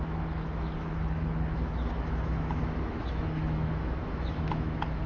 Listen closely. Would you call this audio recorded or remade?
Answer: remade